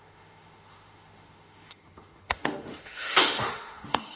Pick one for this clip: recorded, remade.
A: remade